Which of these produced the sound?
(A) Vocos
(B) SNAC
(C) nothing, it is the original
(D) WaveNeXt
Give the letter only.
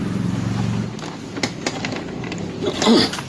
C